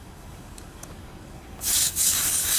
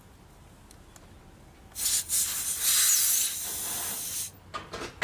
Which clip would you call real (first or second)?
second